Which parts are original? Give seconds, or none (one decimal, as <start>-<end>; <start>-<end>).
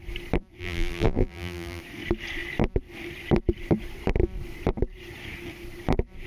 0.0-0.6; 1.8-6.3